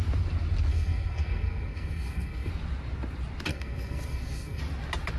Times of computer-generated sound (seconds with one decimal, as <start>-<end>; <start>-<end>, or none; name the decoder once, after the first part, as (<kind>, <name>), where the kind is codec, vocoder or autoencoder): 0.7-2.5 (codec, SNAC); 3.5-4.6

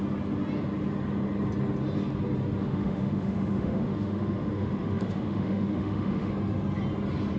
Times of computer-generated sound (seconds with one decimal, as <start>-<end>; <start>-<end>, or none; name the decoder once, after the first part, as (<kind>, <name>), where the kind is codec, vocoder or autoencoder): 2.6-6.3 (autoencoder, DAC-VAE)

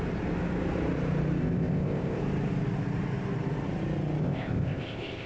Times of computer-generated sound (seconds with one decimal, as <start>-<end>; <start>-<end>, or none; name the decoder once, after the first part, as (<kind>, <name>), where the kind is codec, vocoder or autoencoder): 1.4-2.2 (codec, ZipCodec); 4.2-5.3

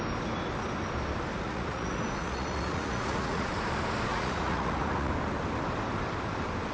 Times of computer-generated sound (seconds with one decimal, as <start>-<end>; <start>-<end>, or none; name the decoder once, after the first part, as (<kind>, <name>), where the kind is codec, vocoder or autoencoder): 1.3-3.5 (vocoder, Vocos); 4.1-5.1

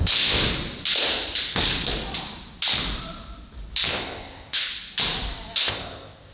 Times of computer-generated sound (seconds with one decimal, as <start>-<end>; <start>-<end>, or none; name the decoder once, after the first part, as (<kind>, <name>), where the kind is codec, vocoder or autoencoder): 0.0-0.4 (codec, ZipCodec); 3.9-4.7; 5.6-6.3

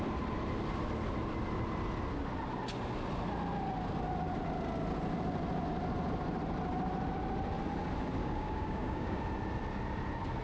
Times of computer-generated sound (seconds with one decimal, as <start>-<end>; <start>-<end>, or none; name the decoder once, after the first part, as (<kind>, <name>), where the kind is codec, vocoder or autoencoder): 8.2-9.2 (codec, DAC)

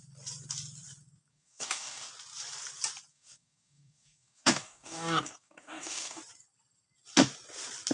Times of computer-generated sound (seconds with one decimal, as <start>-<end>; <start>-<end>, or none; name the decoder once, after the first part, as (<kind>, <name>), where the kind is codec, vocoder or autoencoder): 1.3-2.1 (codec, DAC); 3.1-6.2